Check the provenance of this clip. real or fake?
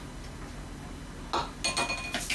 real